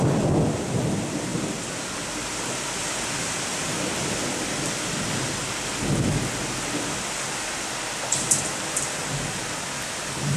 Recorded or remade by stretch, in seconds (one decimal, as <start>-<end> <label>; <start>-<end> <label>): 0.0-10.4 recorded